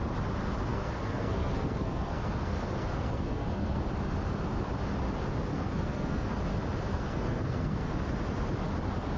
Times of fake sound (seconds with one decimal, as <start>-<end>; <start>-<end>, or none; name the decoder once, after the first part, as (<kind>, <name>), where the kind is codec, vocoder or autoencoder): 0.7-3.8 (codec, SNAC); 5.5-6.4; 6.9-7.9